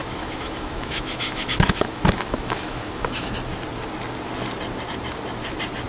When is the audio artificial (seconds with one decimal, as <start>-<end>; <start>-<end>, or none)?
0.0-3.3